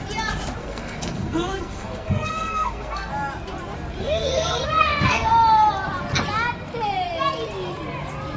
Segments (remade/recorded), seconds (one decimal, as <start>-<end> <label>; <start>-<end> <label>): 0.0-0.6 recorded; 0.6-3.1 remade; 3.1-4.0 recorded; 4.0-5.3 remade; 5.3-8.4 recorded